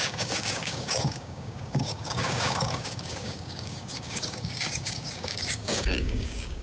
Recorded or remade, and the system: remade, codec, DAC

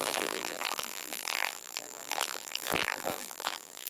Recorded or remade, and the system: remade, vocoder, BigVGAN v2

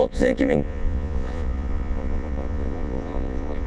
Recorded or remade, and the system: remade, vocoder, Vocos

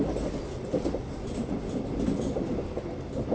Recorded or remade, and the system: recorded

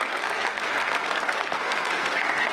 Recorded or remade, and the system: remade, codec, SNAC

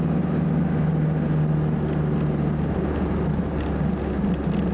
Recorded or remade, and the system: recorded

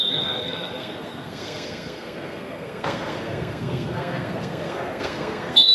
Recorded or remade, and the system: remade, codec, SNAC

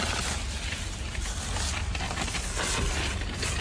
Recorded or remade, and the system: recorded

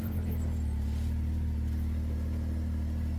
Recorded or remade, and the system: remade, vocoder, BigVGAN v2